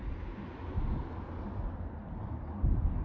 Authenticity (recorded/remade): recorded